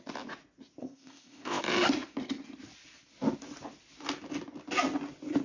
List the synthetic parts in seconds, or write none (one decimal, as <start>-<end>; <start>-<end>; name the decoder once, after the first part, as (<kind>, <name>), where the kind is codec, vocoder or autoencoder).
0.8-1.6 (codec, ZipCodec)